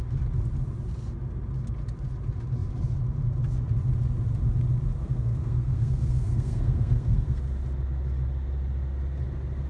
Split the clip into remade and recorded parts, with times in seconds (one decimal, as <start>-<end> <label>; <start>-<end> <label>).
0.0-5.0 recorded; 5.0-7.4 remade; 7.4-9.7 recorded